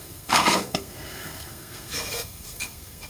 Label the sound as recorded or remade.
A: remade